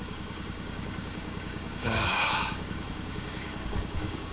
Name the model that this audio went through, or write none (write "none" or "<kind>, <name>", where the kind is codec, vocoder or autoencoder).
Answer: codec, DAC